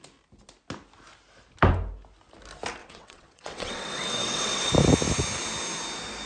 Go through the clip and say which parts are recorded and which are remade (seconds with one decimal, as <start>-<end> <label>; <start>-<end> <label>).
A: 0.0-2.8 recorded; 2.8-4.7 remade; 4.7-6.3 recorded